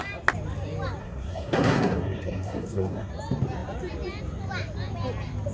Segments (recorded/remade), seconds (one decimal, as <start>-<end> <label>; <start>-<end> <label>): 0.0-1.0 recorded; 1.0-3.1 remade; 3.1-5.5 recorded